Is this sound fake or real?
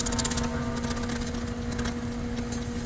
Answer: real